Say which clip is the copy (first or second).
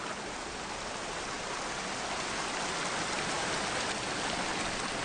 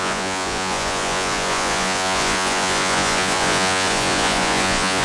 second